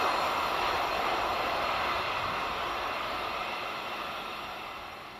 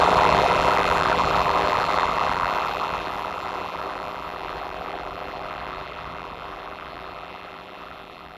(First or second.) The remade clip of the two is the second